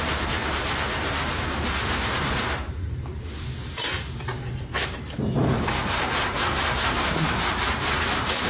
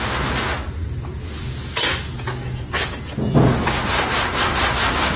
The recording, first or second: second